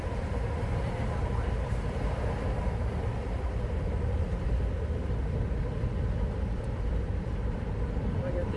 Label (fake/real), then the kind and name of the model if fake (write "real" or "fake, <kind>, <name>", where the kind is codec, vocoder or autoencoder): fake, vocoder, BigVGAN v2